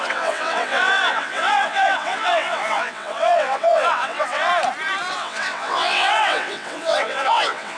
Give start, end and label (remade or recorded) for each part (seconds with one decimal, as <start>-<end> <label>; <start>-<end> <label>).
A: 0.0-4.5 remade; 4.5-5.1 recorded; 5.1-7.8 remade